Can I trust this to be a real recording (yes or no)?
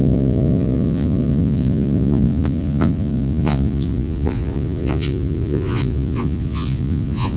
no